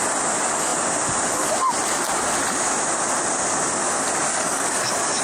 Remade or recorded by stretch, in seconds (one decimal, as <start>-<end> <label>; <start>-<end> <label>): 0.0-4.3 recorded; 4.3-5.2 remade